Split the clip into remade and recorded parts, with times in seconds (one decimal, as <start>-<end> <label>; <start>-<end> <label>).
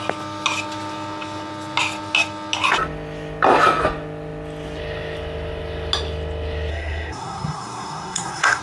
0.0-6.7 recorded; 6.7-8.6 remade